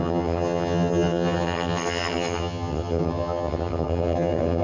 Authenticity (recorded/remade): remade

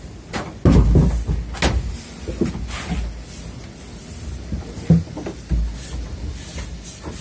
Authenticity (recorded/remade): recorded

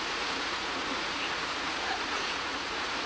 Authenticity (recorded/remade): remade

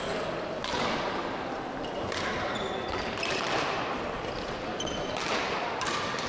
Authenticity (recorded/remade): recorded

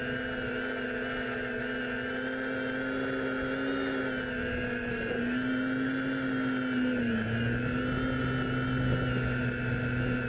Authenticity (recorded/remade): recorded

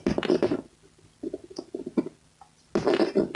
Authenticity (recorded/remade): recorded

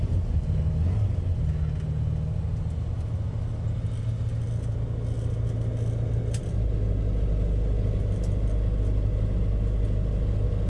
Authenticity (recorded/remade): recorded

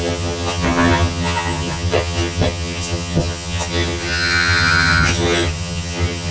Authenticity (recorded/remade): remade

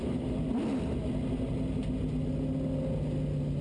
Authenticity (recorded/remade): recorded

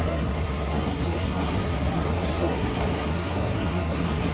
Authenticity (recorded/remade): remade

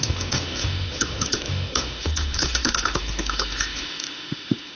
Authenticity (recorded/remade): remade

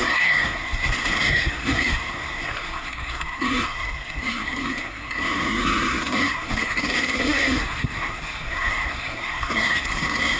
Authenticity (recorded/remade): remade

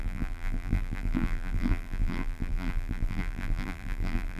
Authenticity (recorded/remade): remade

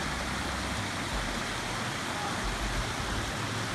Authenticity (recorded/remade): recorded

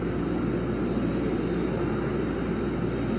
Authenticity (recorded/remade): recorded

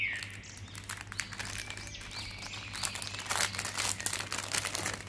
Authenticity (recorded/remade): recorded